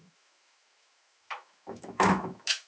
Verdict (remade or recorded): remade